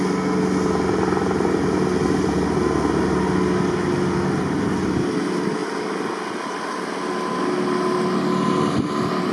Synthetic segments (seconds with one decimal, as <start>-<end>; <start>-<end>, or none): 5.6-6.1